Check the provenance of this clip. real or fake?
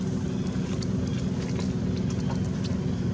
real